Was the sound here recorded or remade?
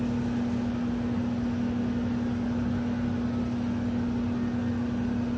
recorded